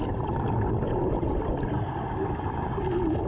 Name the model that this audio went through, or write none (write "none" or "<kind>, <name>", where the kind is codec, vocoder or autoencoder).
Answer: none